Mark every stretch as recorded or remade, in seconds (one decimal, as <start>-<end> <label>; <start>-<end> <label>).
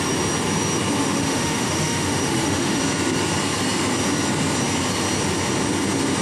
0.0-1.0 recorded; 1.0-2.8 remade; 2.8-6.2 recorded